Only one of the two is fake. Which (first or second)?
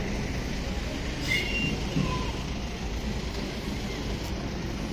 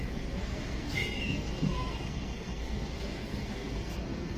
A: second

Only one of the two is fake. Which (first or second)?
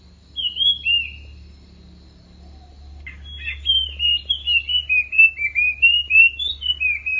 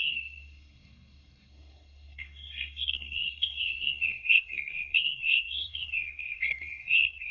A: second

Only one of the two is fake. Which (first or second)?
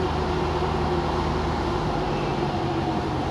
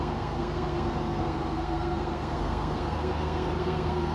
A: second